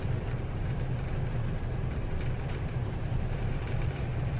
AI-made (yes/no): yes